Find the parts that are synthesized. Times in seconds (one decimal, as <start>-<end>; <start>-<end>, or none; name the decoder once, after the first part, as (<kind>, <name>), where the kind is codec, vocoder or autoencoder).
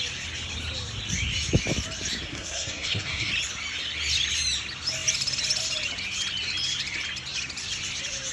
2.3-3.3 (codec, SNAC)